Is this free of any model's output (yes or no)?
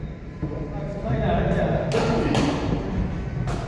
yes